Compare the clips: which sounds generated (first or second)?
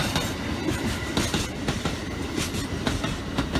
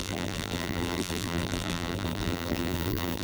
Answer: second